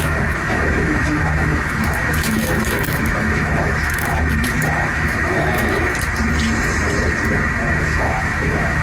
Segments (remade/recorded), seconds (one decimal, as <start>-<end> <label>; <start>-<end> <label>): 0.0-5.9 remade; 5.9-7.8 recorded; 7.8-8.8 remade